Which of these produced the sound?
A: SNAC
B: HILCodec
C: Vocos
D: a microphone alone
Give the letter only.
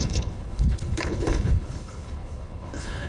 B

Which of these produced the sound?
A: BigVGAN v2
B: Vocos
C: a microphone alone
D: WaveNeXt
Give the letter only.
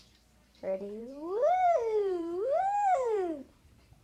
A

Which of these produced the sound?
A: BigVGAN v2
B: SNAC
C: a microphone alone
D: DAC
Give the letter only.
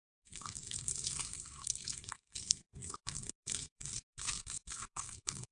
B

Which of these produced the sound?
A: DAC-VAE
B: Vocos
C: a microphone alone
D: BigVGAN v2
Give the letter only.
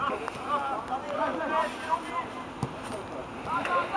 C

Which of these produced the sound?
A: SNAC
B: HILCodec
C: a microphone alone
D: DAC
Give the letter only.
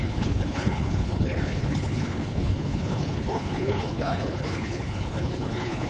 B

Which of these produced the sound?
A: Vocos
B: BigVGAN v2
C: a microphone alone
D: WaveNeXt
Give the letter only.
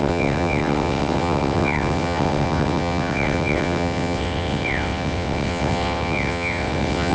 D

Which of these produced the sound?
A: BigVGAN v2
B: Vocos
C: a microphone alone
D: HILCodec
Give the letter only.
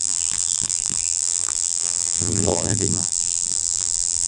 A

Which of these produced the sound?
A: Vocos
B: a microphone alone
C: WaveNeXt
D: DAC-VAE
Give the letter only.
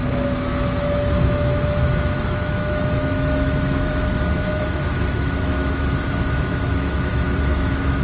D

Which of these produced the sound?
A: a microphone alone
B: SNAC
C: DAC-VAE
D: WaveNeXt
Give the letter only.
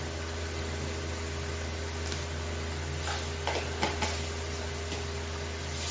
A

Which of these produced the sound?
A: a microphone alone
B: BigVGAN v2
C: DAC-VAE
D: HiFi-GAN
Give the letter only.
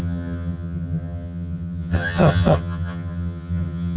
D